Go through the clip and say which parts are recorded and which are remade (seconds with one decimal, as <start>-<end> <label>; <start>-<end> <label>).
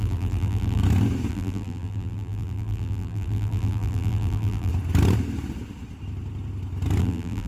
0.0-0.8 remade; 0.8-1.3 recorded; 1.3-4.7 remade; 4.7-7.0 recorded; 7.0-7.5 remade